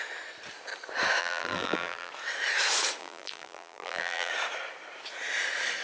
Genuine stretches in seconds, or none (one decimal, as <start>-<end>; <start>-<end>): 0.0-1.2; 2.1-3.0; 4.3-5.8